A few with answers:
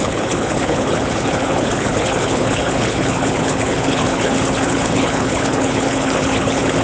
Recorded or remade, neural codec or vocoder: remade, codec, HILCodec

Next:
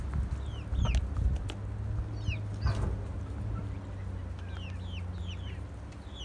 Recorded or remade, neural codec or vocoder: recorded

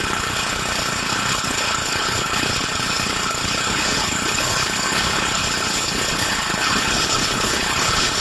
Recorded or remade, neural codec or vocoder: remade, codec, HILCodec